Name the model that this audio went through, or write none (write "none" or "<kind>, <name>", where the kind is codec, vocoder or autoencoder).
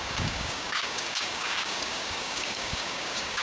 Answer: codec, DAC